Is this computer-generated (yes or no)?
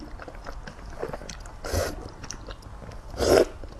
no